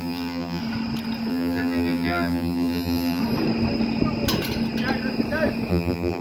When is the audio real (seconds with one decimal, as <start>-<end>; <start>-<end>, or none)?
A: 0.6-1.3; 3.2-5.7